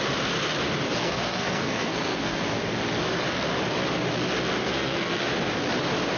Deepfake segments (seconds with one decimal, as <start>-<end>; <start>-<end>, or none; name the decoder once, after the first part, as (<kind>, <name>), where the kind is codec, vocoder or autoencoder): 1.0-2.4 (codec, SNAC); 4.6-5.2